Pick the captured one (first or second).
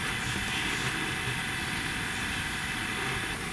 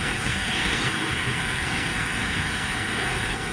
first